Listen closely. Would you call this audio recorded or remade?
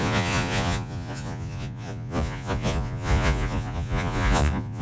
remade